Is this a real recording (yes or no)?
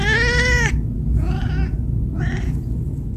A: yes